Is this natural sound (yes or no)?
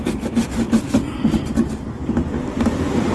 no